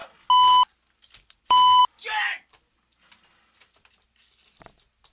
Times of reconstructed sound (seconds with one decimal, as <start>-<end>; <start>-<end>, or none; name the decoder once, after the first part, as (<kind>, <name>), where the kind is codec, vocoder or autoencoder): none